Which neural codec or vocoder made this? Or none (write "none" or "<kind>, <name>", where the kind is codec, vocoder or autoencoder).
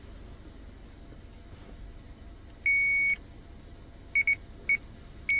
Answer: none